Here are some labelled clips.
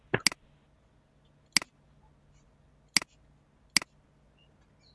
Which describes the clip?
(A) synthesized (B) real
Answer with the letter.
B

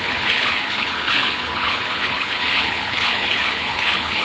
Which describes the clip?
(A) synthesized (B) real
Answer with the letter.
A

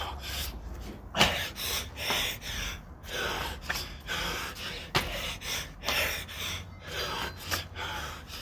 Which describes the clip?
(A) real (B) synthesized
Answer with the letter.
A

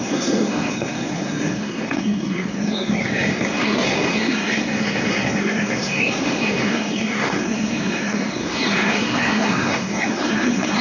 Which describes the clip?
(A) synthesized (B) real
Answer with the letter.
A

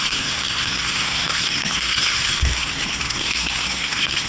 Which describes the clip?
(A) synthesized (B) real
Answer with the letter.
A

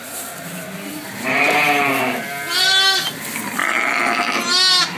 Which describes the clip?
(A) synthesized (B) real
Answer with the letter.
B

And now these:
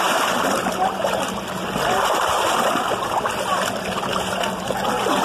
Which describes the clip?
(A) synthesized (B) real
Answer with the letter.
B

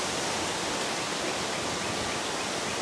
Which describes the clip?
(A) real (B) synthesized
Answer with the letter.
A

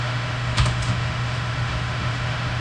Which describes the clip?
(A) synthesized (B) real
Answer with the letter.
A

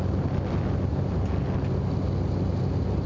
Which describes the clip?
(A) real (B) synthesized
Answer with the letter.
A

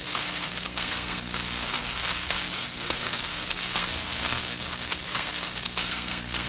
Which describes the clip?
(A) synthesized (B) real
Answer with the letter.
A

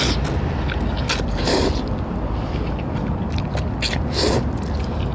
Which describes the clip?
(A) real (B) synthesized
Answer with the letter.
A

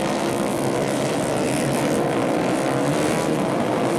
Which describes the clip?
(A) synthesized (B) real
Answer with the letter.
B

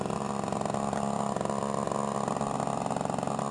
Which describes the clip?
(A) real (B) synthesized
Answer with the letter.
A